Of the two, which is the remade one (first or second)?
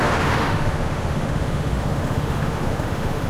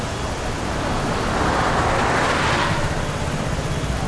first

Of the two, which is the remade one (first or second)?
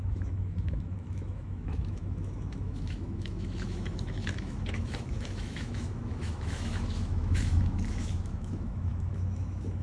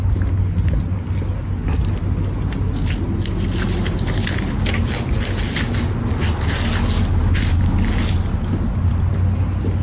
first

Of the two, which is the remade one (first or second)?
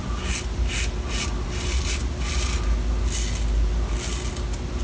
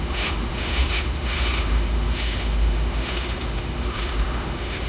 second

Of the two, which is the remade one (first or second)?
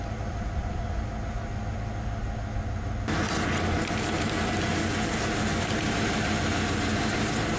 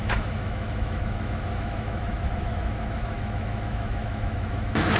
second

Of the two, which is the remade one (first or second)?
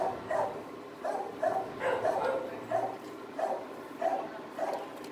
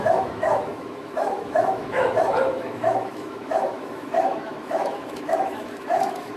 second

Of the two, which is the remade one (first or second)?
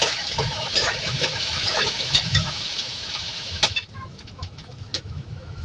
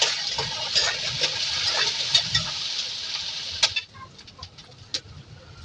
first